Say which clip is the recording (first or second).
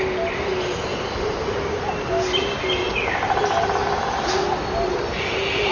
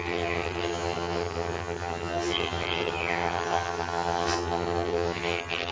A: first